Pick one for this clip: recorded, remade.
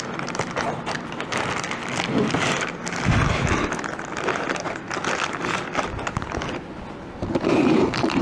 recorded